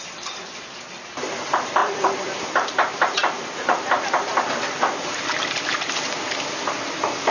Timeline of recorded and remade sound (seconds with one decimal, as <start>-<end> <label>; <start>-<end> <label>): 0.0-1.8 recorded; 1.8-5.9 remade; 5.9-7.3 recorded